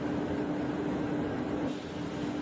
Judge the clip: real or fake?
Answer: real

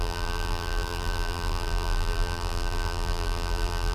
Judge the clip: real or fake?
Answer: fake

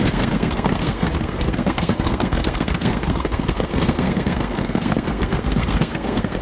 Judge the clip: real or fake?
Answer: fake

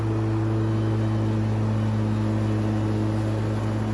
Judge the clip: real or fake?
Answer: real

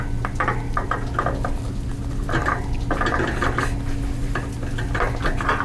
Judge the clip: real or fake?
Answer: real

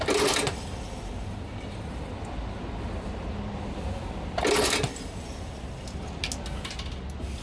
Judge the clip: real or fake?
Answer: real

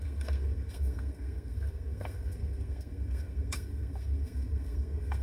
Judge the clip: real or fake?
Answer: fake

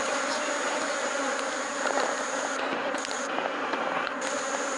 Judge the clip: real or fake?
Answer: fake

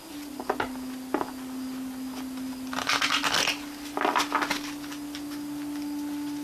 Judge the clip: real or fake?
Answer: real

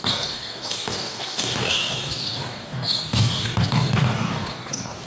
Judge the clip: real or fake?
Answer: fake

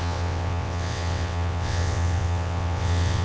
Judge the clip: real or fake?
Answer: fake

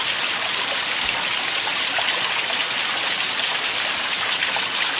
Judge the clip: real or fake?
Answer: real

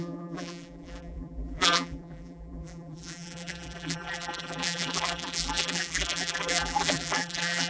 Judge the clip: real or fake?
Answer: fake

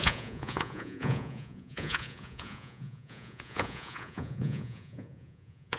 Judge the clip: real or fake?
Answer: fake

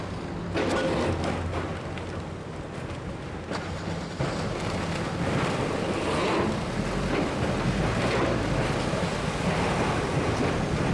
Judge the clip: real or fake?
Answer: real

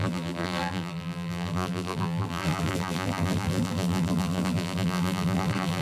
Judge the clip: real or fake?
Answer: fake